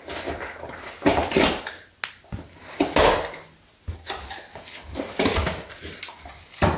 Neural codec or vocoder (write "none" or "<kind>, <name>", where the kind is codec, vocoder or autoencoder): none